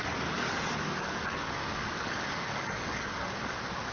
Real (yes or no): no